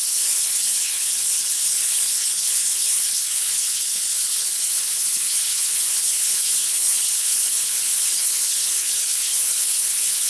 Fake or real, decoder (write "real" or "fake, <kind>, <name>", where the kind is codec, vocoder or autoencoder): fake, codec, HILCodec